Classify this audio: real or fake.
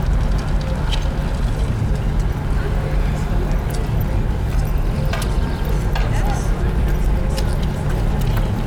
real